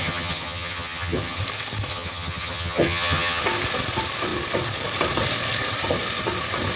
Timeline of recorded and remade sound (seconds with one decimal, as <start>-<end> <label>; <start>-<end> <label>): 0.0-1.4 remade; 1.4-1.9 recorded; 1.9-3.4 remade; 3.4-6.8 recorded